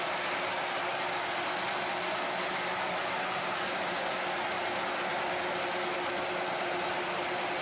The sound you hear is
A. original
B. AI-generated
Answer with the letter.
A